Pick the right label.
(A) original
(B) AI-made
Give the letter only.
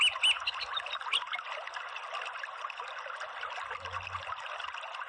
A